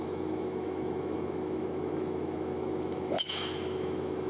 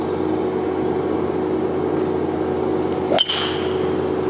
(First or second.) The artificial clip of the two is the first